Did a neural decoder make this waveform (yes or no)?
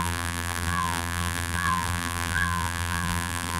yes